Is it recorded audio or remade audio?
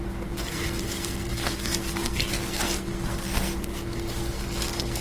remade